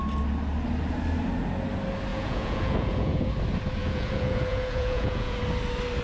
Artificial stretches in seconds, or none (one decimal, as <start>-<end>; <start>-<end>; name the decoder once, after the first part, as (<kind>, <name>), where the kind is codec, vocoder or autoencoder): 2.1-3.3 (vocoder, Vocos); 3.8-5.4